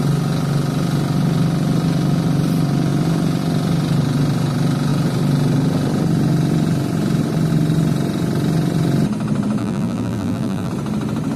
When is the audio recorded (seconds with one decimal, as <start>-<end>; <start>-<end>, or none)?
0.0-9.6; 10.7-11.4